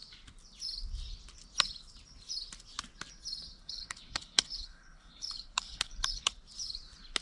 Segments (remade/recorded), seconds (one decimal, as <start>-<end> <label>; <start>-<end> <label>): 0.0-3.6 recorded; 3.6-6.3 remade; 6.3-7.2 recorded